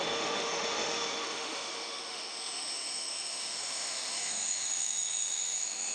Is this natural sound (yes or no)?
no